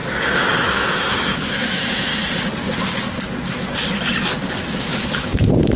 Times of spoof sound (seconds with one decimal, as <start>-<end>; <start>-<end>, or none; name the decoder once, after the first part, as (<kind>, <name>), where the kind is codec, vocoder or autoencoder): 0.7-2.1 (autoencoder, DAC-VAE); 4.7-5.8